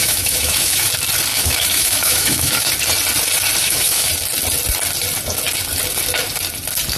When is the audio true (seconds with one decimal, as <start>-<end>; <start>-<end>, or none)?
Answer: 0.9-1.3; 2.7-3.6; 4.1-7.0